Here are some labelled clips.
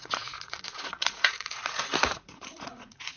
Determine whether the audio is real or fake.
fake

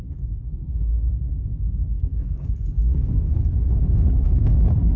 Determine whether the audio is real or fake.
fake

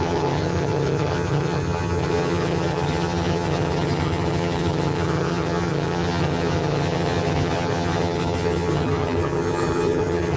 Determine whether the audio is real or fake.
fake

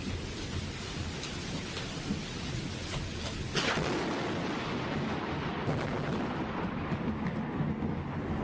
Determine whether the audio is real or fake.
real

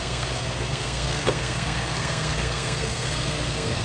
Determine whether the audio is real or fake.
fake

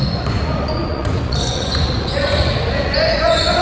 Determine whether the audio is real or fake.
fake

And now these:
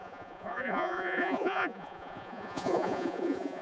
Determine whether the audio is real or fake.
fake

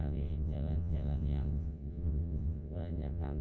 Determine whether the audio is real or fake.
fake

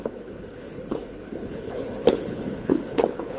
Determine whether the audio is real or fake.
fake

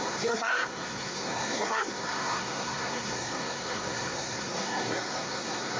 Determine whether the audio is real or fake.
fake